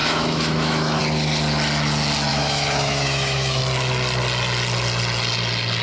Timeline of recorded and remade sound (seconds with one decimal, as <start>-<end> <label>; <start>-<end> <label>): 0.0-1.0 remade; 1.0-2.3 recorded; 2.3-3.6 remade; 3.6-5.8 recorded